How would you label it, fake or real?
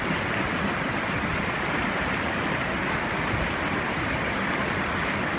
real